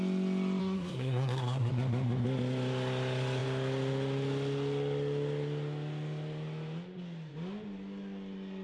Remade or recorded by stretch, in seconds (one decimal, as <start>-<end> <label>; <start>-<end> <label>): 0.0-0.6 recorded; 0.6-1.7 remade; 1.7-8.6 recorded